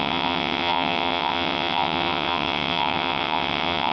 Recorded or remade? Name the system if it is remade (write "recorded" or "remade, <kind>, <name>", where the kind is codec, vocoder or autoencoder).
remade, vocoder, WaveNeXt